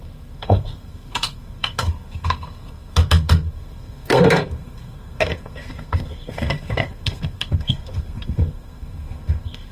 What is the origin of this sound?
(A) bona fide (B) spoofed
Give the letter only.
B